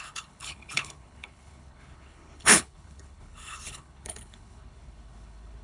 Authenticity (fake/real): fake